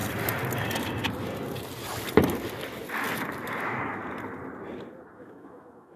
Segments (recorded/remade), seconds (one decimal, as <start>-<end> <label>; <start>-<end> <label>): 0.0-3.6 recorded; 3.6-4.0 remade; 4.0-5.1 recorded; 5.1-6.0 remade